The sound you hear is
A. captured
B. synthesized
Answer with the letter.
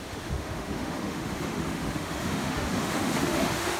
B